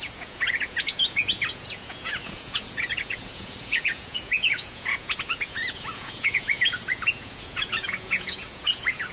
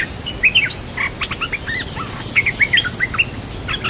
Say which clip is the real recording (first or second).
second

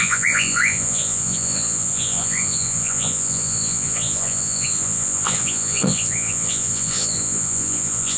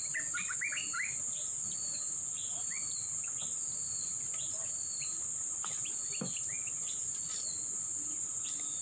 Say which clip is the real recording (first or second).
second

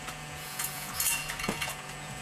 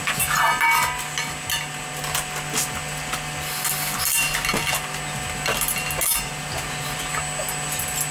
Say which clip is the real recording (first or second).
second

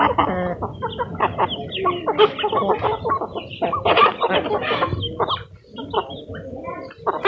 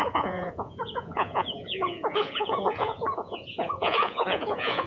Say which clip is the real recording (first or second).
first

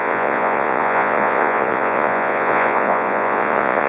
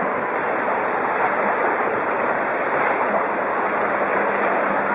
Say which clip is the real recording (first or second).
second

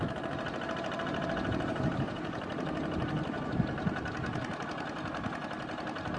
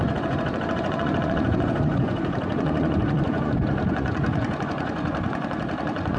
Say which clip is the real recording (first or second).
first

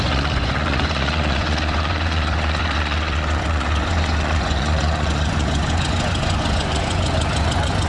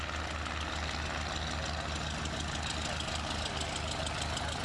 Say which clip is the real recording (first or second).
second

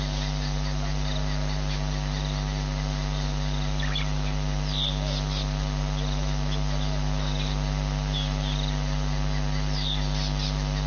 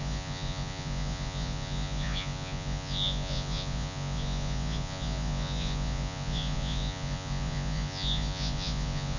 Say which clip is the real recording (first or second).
first